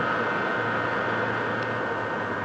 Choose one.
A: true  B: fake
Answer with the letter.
A